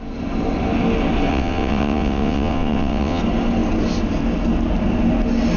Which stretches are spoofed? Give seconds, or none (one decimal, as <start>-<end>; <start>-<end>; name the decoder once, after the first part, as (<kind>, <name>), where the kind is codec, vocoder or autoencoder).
1.3-3.2 (vocoder, WaveNeXt)